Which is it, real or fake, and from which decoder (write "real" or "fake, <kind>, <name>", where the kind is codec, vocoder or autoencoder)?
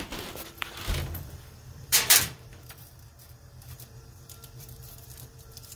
fake, vocoder, BigVGAN v2